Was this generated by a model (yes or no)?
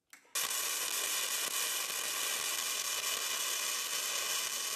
no